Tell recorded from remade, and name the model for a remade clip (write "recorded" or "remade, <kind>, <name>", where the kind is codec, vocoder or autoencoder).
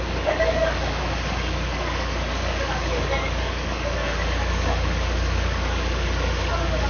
remade, codec, DAC